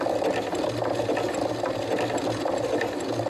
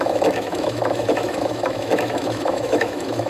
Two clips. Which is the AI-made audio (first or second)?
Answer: second